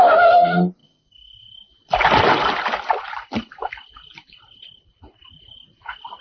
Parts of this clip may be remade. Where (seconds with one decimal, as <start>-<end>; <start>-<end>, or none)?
none